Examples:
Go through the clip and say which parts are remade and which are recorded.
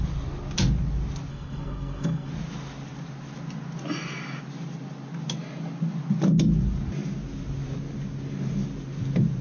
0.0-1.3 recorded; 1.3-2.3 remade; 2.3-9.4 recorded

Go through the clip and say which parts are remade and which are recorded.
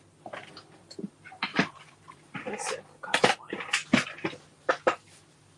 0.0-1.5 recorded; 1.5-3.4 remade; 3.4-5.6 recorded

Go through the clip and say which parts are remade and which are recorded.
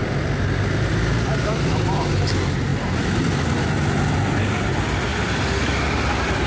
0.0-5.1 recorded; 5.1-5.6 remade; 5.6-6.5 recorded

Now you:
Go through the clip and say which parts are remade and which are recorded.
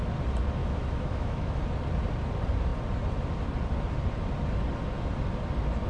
0.0-0.6 recorded; 0.6-1.6 remade; 1.6-5.9 recorded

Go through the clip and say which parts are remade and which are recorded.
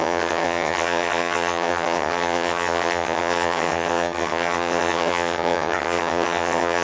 0.0-6.8 remade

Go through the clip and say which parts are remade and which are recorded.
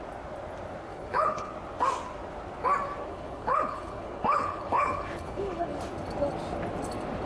0.0-0.9 recorded; 0.9-1.5 remade; 1.5-3.1 recorded; 3.1-5.8 remade; 5.8-7.3 recorded